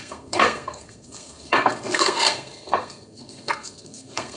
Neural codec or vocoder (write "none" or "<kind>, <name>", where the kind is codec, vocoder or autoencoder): codec, SNAC